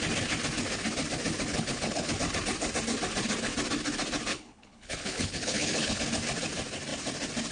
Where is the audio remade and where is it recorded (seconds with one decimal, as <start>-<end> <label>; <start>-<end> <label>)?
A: 0.0-1.5 recorded; 1.5-2.1 remade; 2.1-4.3 recorded; 4.3-6.0 remade; 6.0-7.5 recorded